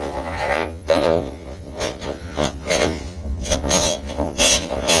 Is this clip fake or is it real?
fake